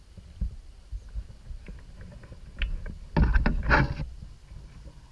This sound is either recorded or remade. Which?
recorded